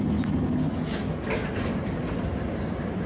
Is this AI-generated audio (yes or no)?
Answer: no